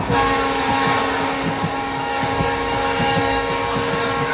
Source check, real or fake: fake